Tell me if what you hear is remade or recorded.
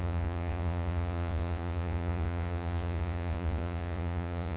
remade